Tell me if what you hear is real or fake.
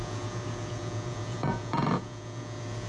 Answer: fake